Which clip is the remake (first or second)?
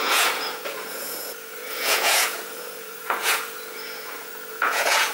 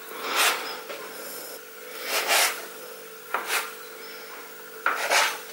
first